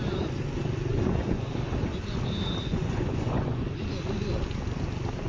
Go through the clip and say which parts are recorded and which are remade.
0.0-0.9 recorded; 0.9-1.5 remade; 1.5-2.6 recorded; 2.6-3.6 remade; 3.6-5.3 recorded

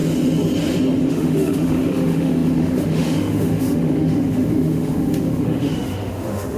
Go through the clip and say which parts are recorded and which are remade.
0.0-1.1 recorded; 1.1-6.6 remade

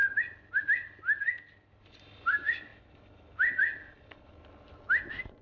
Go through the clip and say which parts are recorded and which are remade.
0.0-2.7 recorded; 2.7-4.9 remade; 4.9-5.4 recorded

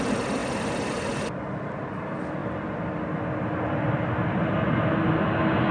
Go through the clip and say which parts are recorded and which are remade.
0.0-5.7 recorded